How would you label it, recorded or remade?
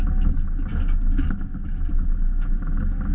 recorded